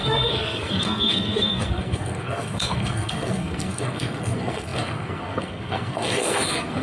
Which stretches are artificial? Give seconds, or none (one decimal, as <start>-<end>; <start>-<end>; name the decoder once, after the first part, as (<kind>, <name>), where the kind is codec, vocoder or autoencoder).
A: 0.0-6.8 (codec, SNAC)